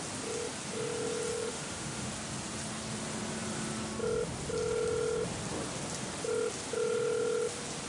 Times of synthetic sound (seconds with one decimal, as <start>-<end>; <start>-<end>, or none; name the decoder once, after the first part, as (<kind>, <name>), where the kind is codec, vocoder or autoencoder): 1.3-2.1 (autoencoder, DAC-VAE)